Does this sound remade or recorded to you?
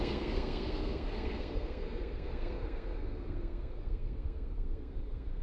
remade